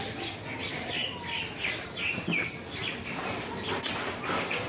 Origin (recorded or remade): recorded